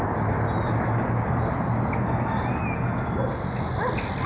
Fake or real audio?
real